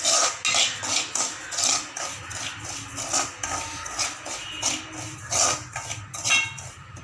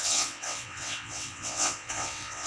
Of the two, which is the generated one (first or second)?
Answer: second